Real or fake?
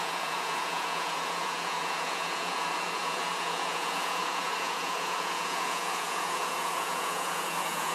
fake